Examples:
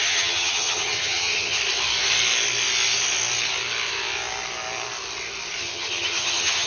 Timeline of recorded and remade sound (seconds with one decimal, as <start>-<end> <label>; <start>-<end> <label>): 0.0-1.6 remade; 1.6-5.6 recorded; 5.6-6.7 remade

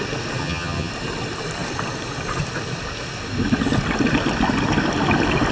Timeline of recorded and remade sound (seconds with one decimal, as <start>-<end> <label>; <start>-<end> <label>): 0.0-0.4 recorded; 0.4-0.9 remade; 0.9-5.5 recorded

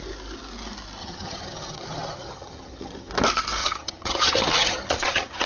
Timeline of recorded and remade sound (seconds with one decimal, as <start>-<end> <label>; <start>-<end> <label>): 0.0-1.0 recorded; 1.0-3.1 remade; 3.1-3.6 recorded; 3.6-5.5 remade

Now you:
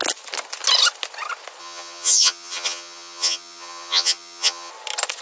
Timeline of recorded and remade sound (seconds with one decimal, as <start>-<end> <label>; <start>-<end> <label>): 0.0-1.6 recorded; 1.6-4.7 remade; 4.7-5.2 recorded

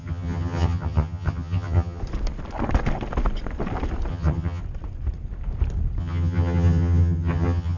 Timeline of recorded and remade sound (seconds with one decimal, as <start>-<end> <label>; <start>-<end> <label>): 0.0-2.0 remade; 2.0-4.1 recorded; 4.1-4.6 remade; 4.6-6.0 recorded; 6.0-7.8 remade

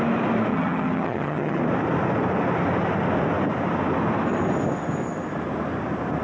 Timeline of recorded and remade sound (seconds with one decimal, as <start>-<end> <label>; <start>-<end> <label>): 0.0-0.5 recorded; 0.5-1.6 remade; 1.6-6.2 recorded